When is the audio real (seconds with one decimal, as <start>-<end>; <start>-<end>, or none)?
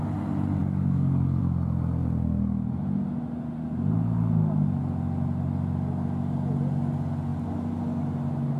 0.0-0.6; 1.4-8.6